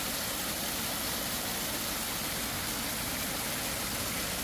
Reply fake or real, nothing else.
real